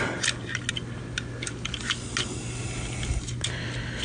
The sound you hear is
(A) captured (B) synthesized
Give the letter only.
A